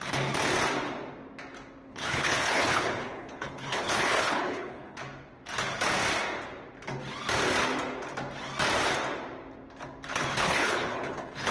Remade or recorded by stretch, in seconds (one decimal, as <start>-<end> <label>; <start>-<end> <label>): 0.0-1.9 recorded; 1.9-5.0 remade; 5.0-10.3 recorded; 10.3-11.5 remade